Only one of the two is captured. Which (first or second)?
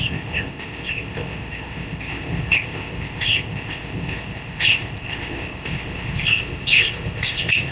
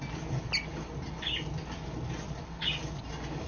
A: second